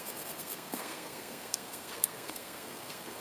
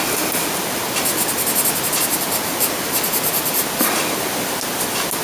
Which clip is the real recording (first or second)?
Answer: second